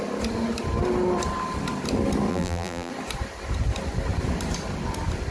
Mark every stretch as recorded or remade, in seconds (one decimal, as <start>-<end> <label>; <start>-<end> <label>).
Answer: 0.0-2.3 recorded; 2.3-2.9 remade; 2.9-5.3 recorded